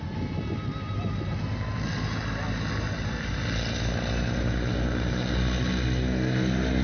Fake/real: real